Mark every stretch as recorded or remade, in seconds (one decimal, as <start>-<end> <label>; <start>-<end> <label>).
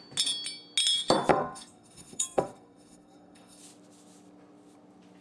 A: 0.0-1.3 recorded; 1.3-3.6 remade; 3.6-5.2 recorded